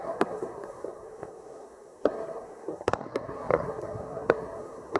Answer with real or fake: fake